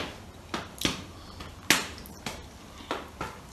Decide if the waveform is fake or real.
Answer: real